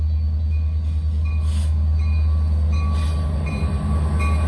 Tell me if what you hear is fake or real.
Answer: real